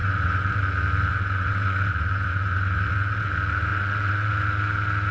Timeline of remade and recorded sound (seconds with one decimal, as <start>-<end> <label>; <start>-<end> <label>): 0.0-0.6 remade; 0.6-1.1 recorded; 1.1-3.3 remade; 3.3-3.7 recorded; 3.7-4.3 remade; 4.3-5.1 recorded